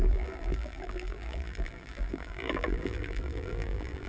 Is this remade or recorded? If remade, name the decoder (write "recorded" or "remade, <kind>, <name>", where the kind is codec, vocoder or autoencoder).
remade, vocoder, BigVGAN v2